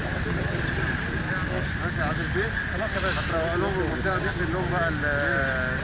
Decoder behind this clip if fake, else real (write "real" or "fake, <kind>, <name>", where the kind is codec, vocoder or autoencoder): real